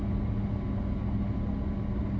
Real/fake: real